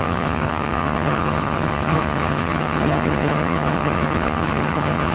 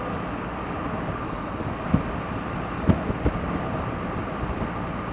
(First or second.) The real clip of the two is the second